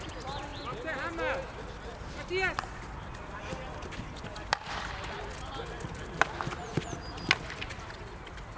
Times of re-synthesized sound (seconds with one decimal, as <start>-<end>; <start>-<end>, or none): none